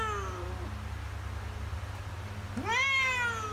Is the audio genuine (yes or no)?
yes